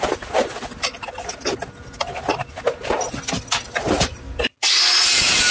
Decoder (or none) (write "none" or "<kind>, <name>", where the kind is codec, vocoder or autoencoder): none